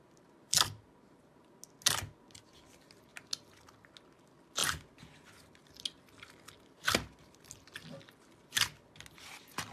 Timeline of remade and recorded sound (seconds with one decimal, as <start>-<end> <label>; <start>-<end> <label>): 0.0-9.7 recorded

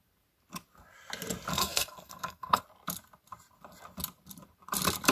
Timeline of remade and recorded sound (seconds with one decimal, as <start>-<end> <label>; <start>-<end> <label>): 0.0-1.5 recorded; 1.5-2.6 remade; 2.6-5.1 recorded

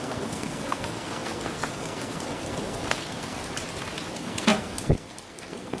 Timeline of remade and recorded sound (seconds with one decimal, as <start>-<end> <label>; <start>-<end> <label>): 0.0-3.4 remade; 3.4-4.1 recorded; 4.1-5.8 remade

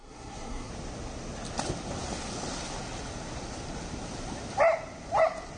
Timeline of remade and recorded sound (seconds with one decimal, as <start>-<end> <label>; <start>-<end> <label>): 0.0-0.7 remade; 0.7-5.6 recorded

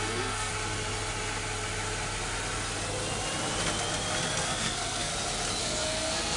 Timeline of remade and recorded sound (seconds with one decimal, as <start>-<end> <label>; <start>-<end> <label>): 0.0-0.5 remade; 0.5-4.3 recorded; 4.3-5.1 remade; 5.1-5.6 recorded; 5.6-6.4 remade